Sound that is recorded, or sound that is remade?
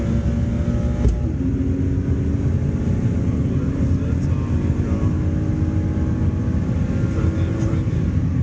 recorded